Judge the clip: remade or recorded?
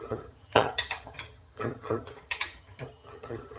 remade